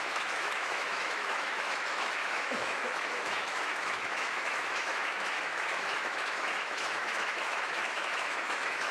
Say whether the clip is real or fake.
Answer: fake